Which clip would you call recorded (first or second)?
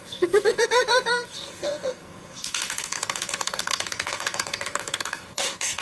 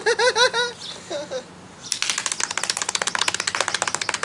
second